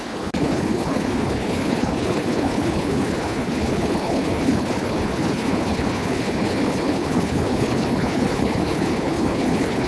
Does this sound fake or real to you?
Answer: fake